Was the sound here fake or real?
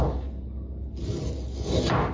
real